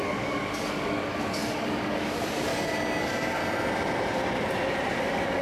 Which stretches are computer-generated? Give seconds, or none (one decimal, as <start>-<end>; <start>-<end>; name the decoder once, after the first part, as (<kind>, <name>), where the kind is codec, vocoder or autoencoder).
0.0-2.5 (codec, DAC); 3.0-3.4; 5.0-5.4